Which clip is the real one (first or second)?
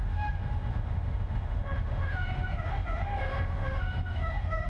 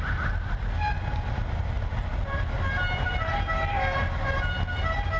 second